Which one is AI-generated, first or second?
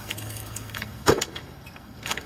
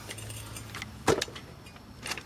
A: first